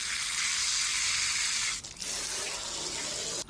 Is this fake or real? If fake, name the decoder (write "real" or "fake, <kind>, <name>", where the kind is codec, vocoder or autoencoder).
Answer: real